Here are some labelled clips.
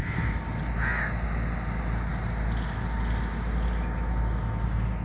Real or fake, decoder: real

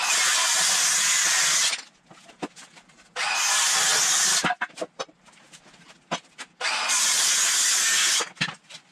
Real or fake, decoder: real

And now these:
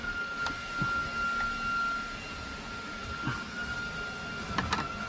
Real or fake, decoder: real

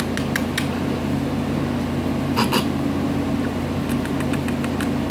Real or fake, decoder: real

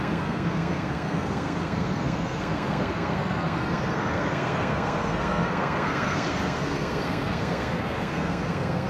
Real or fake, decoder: fake, codec, SNAC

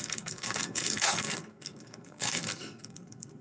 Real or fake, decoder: fake, codec, SNAC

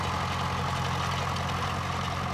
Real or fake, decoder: real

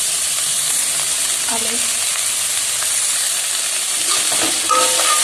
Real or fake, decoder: real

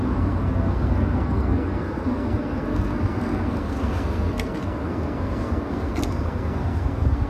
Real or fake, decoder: fake, codec, SNAC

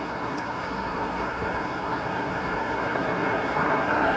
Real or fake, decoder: fake, codec, SNAC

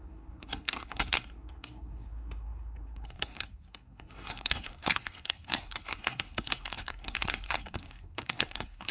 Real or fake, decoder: fake, codec, SNAC